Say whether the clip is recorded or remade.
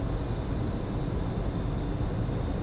recorded